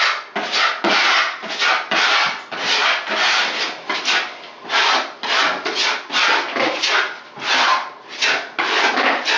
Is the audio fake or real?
real